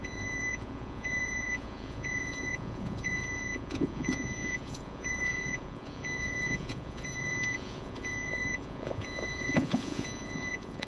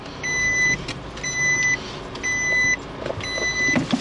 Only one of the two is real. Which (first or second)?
second